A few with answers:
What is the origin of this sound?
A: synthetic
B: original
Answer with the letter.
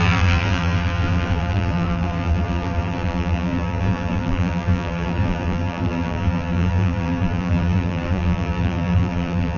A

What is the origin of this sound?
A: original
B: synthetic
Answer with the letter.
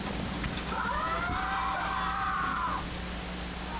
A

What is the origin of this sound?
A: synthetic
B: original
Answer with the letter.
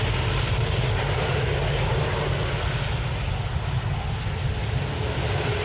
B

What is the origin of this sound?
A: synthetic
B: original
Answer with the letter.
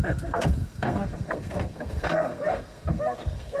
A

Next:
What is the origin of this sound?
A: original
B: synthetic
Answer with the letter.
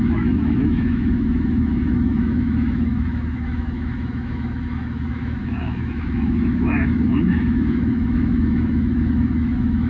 B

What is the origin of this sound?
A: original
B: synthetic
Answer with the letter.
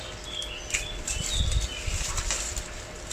A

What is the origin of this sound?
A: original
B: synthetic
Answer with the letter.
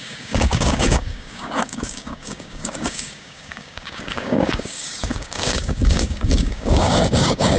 B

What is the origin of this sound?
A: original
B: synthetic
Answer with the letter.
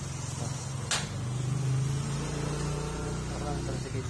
A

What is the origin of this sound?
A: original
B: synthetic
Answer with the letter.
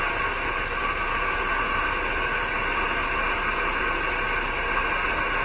A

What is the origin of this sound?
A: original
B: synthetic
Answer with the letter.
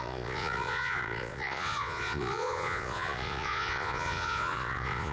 B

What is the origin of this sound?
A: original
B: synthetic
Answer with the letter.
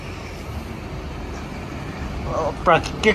A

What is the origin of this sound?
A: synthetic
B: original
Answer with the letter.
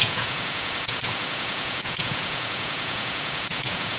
A